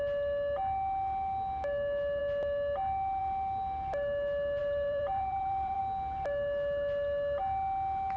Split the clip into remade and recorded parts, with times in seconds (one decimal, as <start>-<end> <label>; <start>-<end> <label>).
0.0-4.6 recorded; 4.6-5.8 remade; 5.8-8.2 recorded